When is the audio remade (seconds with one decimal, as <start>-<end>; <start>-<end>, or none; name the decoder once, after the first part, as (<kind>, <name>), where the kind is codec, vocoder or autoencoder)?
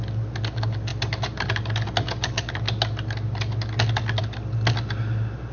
none